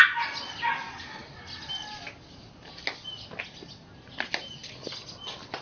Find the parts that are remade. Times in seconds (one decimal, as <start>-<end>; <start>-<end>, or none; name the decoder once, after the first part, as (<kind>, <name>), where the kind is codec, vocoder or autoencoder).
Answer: none